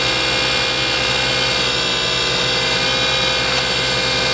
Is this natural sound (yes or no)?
yes